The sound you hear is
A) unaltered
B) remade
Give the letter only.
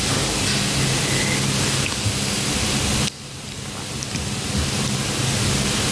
A